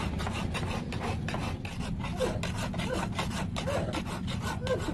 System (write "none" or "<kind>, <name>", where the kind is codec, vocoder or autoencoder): none